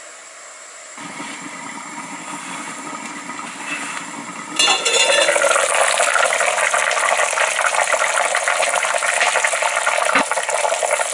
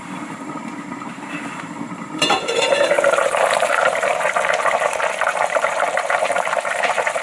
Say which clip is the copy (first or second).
second